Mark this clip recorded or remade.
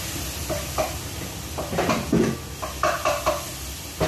recorded